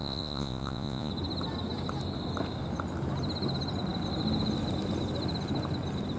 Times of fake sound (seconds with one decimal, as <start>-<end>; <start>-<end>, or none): 0.0-1.1